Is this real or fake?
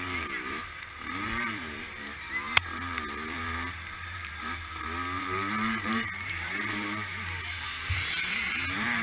fake